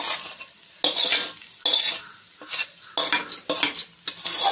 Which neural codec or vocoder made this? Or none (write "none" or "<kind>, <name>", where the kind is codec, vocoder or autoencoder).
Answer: none